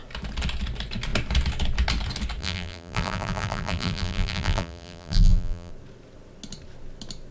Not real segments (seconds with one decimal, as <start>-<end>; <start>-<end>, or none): 2.4-5.7